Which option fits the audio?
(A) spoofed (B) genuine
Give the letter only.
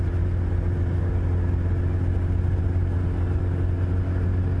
B